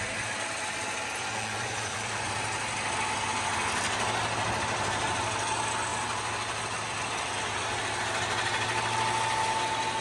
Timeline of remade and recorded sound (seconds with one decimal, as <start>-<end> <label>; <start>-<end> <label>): 0.0-1.2 recorded; 1.2-2.3 remade; 2.3-10.0 recorded